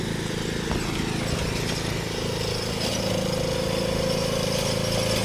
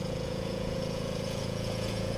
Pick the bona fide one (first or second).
first